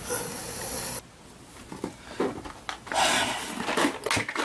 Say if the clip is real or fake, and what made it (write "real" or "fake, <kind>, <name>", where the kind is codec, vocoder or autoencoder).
real